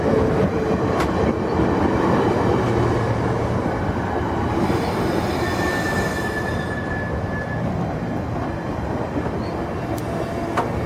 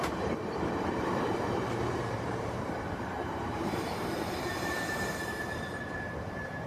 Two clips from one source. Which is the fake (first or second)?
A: second